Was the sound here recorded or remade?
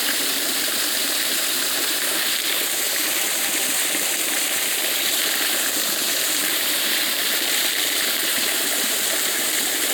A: remade